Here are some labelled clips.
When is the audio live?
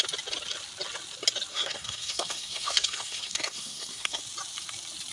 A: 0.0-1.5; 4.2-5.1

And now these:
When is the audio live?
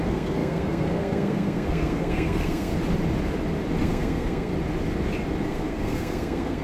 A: 2.7-3.8; 4.5-5.4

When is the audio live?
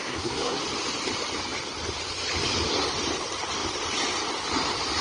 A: 0.6-5.0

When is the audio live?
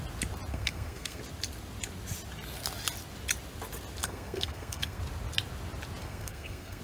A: 0.0-0.5; 1.2-4.0; 5.0-6.0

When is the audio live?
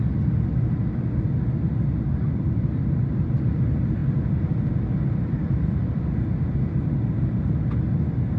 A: 0.0-8.4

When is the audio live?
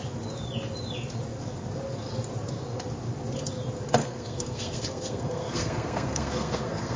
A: 0.0-4.0